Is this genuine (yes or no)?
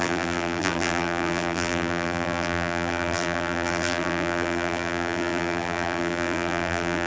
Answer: no